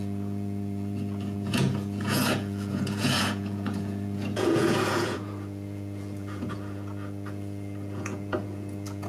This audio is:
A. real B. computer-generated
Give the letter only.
B